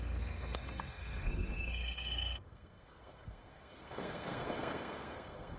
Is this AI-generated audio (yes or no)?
yes